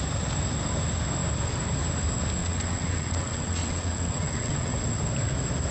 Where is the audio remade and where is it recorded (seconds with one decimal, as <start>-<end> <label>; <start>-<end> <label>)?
0.0-2.4 recorded; 2.4-4.7 remade; 4.7-5.7 recorded